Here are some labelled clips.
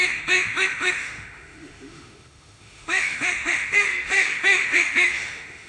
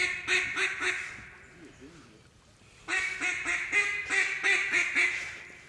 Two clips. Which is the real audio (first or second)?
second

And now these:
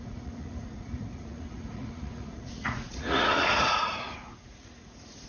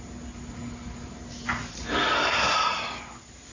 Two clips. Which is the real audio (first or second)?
second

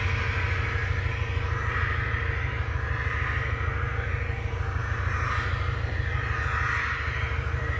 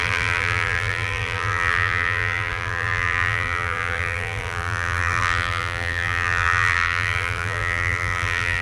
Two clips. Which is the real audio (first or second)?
first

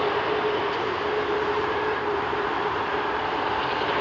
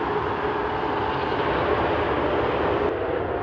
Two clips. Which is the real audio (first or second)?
second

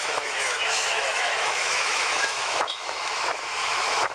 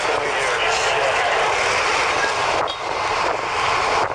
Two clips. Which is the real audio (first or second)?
second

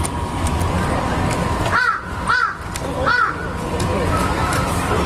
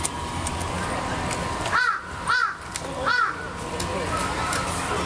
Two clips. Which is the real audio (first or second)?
second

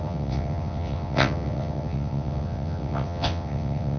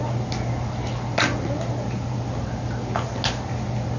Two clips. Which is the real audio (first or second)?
second